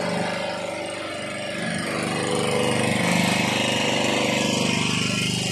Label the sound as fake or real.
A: real